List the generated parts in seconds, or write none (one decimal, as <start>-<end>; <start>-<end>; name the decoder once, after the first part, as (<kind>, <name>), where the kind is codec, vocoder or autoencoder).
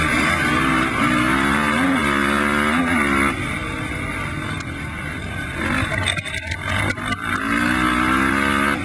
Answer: none